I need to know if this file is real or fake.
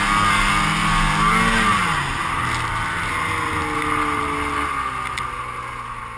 real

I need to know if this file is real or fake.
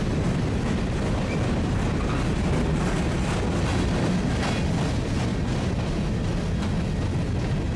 real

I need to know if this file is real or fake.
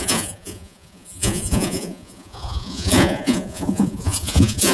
fake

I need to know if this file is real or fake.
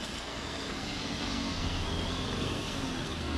fake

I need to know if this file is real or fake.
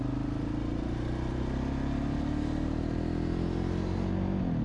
real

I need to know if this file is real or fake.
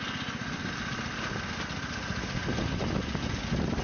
real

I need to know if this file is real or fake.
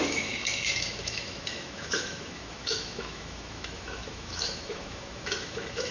fake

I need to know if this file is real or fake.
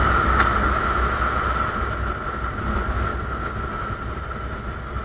real